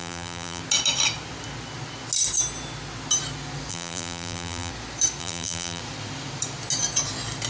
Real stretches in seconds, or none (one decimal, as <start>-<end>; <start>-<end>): 0.6-3.7; 4.7-5.2; 5.8-7.5